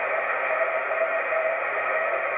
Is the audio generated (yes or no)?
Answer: no